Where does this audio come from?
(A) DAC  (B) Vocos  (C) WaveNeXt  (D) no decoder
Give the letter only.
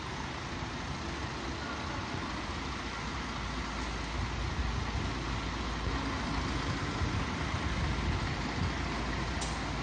D